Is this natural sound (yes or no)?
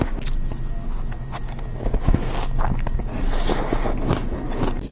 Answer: yes